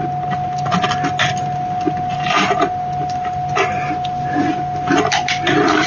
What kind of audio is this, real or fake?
real